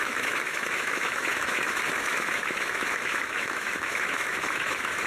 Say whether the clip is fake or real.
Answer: fake